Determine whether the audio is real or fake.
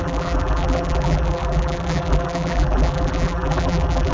fake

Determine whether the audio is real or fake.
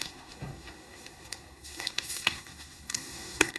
fake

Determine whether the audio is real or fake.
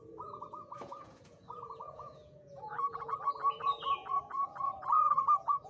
fake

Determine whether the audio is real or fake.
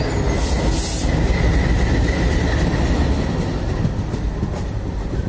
real